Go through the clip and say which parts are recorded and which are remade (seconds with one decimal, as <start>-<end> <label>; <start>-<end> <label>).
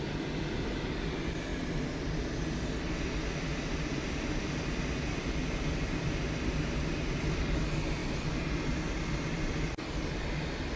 0.0-10.8 recorded